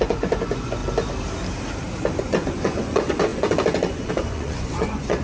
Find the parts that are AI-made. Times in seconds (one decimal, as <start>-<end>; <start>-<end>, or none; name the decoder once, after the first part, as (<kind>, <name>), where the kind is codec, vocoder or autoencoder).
0.0-0.8 (vocoder, Vocos); 2.2-5.2